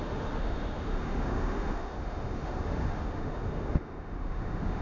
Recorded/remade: remade